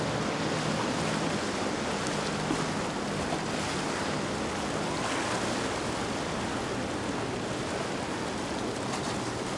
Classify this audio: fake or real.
real